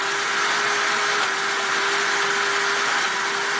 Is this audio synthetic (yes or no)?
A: no